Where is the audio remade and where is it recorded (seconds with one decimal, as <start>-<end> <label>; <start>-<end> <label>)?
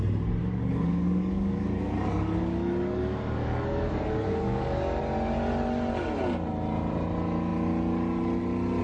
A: 0.0-0.4 recorded; 0.4-5.0 remade; 5.0-8.8 recorded